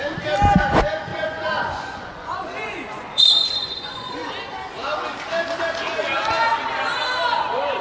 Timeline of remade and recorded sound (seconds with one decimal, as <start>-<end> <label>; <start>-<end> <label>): 0.0-1.1 recorded; 1.1-4.3 remade; 4.3-7.8 recorded